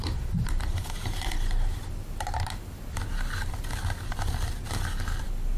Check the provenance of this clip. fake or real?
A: fake